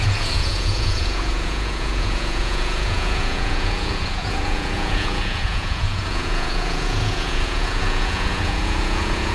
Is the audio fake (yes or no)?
yes